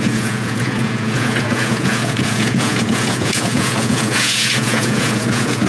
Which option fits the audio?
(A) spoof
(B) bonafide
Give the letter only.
A